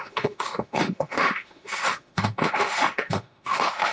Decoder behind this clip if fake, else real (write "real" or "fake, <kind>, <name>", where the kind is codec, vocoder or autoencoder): fake, autoencoder, DAC-VAE